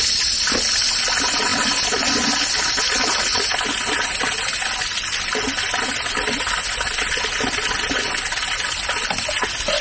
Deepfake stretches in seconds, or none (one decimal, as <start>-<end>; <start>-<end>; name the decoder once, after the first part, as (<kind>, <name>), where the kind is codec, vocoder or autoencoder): none